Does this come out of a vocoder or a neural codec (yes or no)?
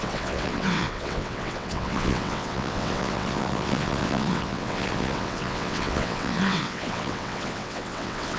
yes